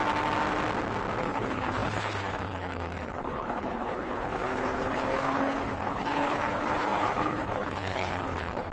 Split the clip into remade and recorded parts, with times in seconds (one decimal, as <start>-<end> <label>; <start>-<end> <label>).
0.0-1.2 recorded; 1.2-8.7 remade